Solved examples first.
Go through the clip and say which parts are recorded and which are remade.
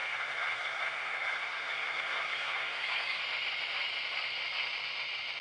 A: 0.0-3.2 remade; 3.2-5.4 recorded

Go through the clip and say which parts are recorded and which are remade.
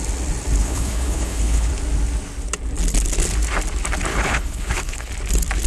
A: 0.0-0.6 recorded; 0.6-1.7 remade; 1.7-4.1 recorded; 4.1-5.1 remade; 5.1-5.7 recorded